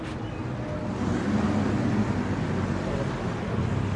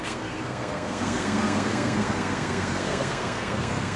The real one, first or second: first